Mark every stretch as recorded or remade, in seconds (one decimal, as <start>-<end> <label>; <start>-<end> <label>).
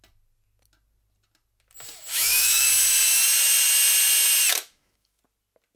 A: 0.0-2.1 recorded; 2.1-2.7 remade; 2.7-4.5 recorded; 4.5-5.2 remade; 5.2-5.8 recorded